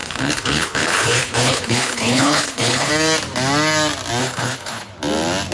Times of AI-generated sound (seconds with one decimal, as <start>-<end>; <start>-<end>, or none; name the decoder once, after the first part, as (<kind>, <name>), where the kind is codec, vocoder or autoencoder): 0.0-2.9 (codec, HILCodec); 4.2-4.9

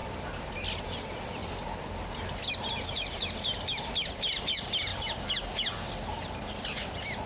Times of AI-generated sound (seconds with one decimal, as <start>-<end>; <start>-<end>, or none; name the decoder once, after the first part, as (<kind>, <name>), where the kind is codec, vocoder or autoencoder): none

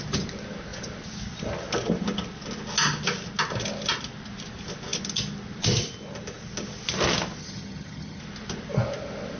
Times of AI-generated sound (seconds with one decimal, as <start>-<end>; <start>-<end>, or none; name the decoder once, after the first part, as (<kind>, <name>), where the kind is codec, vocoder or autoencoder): 7.4-8.2 (vocoder, HiFi-GAN)

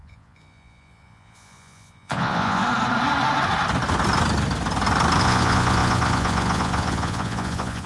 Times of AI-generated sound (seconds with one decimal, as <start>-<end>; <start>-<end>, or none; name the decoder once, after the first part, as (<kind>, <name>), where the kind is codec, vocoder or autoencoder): 0.0-2.6 (vocoder, Vocos); 5.2-7.9

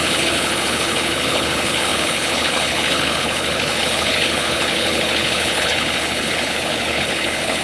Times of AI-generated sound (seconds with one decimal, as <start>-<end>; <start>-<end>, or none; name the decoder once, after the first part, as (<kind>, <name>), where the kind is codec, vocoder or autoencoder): 0.0-7.6 (codec, HILCodec)

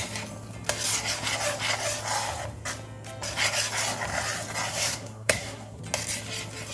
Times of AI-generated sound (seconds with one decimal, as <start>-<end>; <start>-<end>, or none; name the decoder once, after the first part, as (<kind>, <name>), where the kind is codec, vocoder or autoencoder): 4.7-5.8 (codec, SNAC)

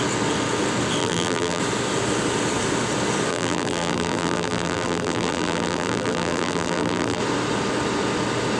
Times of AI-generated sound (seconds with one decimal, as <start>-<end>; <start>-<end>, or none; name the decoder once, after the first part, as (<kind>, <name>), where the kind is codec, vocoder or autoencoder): 1.0-1.6 (vocoder, BigVGAN v2); 3.3-7.2

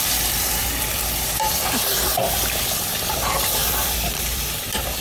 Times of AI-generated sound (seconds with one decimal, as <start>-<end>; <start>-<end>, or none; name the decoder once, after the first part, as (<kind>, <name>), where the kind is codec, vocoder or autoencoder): 0.0-5.0 (vocoder, BigVGAN v2)